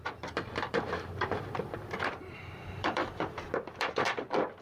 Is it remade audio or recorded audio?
remade